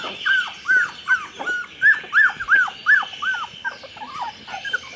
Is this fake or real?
real